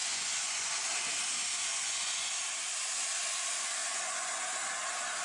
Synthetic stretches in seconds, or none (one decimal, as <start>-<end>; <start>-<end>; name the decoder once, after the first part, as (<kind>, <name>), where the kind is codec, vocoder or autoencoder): 0.0-0.7 (vocoder, Vocos); 1.7-2.3; 3.8-4.4